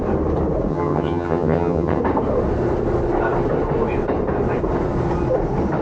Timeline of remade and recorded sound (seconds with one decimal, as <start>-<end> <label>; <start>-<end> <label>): 0.0-0.7 recorded; 0.7-2.0 remade; 2.0-5.8 recorded